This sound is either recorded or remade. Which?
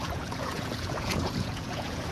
remade